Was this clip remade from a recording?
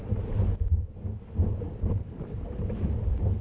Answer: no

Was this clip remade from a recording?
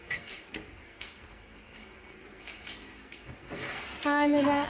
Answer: yes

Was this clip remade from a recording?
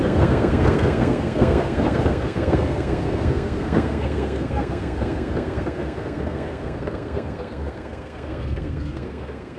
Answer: yes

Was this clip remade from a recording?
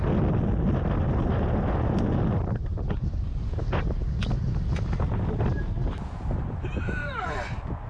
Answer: no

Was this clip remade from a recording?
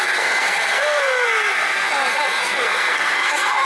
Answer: yes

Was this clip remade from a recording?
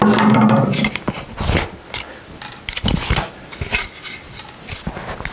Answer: no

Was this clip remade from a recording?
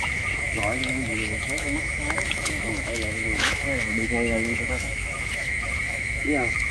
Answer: yes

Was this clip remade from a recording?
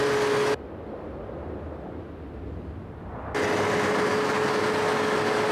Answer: no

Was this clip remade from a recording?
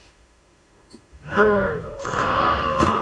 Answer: yes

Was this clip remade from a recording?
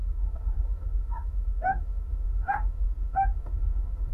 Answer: yes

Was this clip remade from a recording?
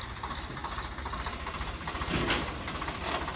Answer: no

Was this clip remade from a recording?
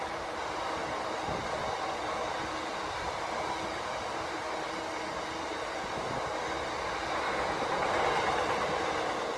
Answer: no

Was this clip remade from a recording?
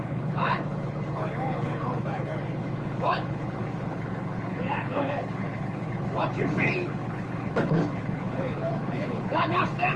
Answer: yes